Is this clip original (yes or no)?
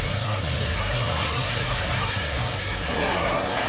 no